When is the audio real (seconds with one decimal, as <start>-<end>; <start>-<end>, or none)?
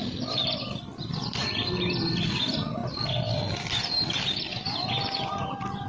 0.8-4.5; 5.0-5.9